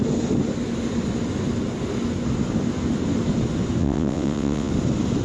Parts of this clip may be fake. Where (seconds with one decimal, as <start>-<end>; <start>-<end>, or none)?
3.8-4.7